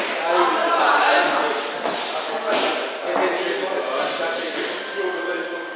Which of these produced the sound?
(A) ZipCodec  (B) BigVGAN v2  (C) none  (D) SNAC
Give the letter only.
C